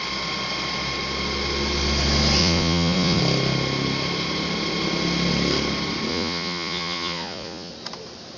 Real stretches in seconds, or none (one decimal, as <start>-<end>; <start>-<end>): 0.0-2.4; 3.2-6.1; 7.7-8.4